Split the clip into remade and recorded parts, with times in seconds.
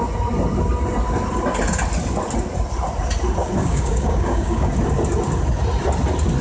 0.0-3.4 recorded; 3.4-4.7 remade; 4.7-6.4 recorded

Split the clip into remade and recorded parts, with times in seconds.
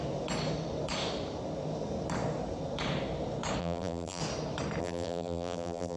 0.0-3.6 recorded; 3.6-4.2 remade; 4.2-4.8 recorded; 4.8-6.0 remade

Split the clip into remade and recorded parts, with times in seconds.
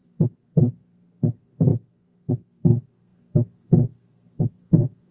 0.0-5.1 remade